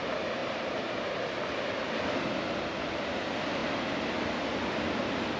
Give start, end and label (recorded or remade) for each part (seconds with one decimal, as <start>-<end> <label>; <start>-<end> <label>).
0.0-5.4 recorded